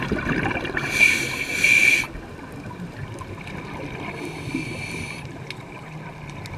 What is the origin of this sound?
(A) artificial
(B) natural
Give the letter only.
B